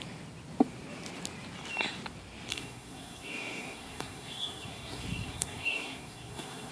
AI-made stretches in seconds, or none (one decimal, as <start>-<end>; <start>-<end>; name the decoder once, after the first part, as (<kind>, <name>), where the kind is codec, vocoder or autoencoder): 2.5-6.7 (codec, SNAC)